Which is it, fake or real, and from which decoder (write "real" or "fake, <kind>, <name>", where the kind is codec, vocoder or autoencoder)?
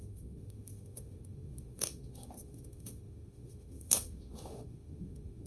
fake, autoencoder, DAC-VAE